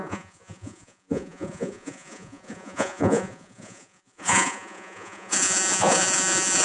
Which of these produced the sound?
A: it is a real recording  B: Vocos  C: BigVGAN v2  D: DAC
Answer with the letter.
B